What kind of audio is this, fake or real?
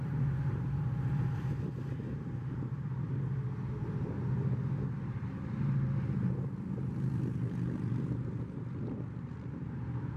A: fake